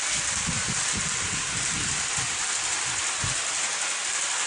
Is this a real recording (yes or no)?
yes